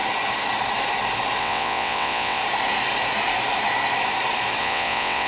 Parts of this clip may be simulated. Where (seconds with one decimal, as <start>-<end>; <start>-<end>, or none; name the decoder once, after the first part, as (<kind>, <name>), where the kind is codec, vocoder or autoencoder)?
1.4-2.4 (vocoder, WaveNeXt); 4.6-5.3